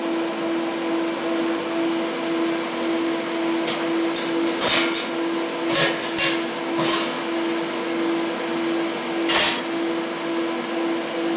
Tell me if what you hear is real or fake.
real